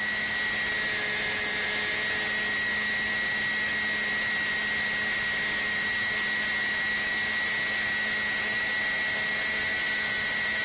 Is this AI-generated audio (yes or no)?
no